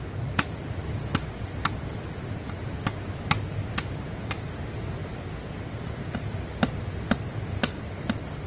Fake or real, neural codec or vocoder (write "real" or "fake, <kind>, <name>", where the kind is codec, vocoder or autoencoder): real